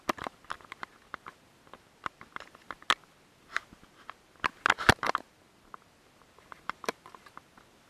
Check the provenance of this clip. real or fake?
real